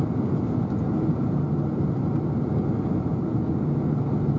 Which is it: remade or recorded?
recorded